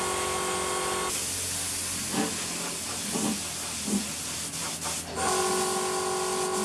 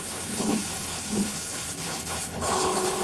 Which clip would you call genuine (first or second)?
first